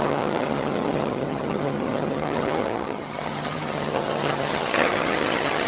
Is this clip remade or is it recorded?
remade